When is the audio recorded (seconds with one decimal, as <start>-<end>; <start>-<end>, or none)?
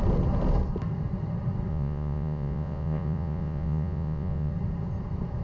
0.0-1.7; 4.5-5.4